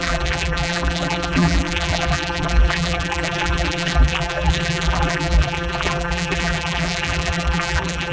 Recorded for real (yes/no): no